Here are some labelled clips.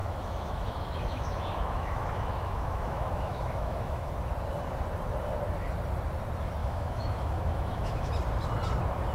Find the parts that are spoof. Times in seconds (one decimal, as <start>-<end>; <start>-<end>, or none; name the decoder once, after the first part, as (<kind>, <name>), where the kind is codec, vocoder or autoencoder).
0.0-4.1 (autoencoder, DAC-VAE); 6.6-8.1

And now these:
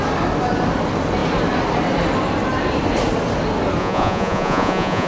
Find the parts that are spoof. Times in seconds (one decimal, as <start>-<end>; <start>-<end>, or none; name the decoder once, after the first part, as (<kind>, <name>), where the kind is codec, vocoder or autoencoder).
3.8-5.1 (vocoder, Vocos)

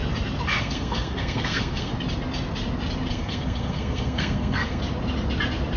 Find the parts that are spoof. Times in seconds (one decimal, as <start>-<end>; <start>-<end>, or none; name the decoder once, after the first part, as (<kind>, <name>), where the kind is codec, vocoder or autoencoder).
0.6-1.9 (codec, SNAC); 3.1-4.8

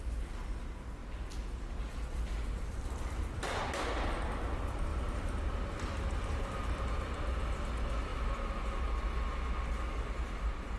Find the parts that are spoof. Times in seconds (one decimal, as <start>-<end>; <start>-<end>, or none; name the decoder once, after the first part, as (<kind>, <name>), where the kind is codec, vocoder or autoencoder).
4.9-6.8 (vocoder, BigVGAN v2)